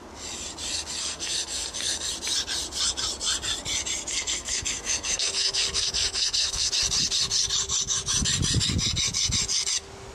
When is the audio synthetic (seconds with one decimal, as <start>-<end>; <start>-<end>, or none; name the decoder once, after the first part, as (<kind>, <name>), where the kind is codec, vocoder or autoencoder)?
1.0-2.1 (codec, SNAC); 4.1-6.7